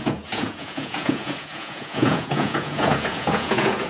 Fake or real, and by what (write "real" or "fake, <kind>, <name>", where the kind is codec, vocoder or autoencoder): fake, vocoder, Vocos